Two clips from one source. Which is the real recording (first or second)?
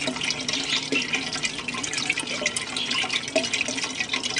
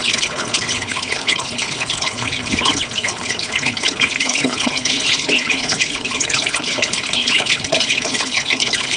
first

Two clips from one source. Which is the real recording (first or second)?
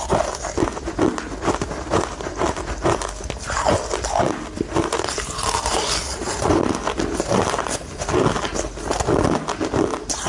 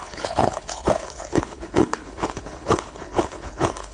first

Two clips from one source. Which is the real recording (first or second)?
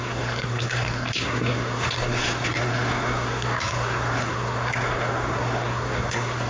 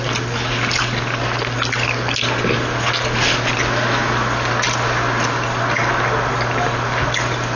second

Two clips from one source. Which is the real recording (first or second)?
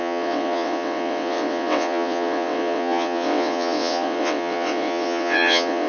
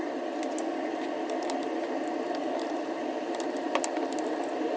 second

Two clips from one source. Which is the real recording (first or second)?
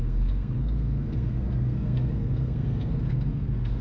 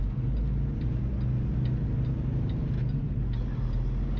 second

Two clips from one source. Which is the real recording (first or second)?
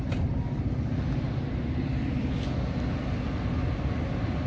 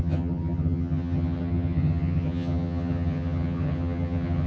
first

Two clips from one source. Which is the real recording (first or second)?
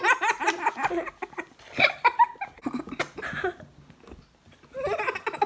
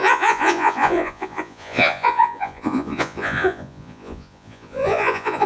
first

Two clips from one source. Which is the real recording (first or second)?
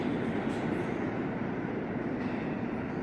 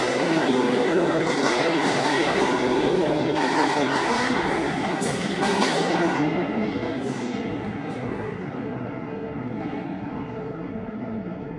first